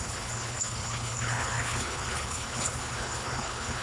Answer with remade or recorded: remade